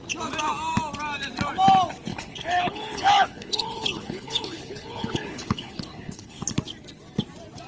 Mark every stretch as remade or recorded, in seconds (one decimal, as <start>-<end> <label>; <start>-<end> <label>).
0.0-2.1 recorded; 2.1-6.4 remade; 6.4-7.7 recorded